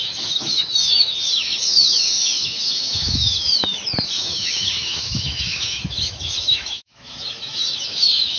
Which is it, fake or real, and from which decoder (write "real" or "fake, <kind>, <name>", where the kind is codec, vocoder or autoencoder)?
fake, autoencoder, DAC-VAE